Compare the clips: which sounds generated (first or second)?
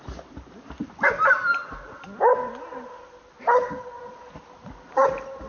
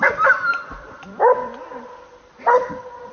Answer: second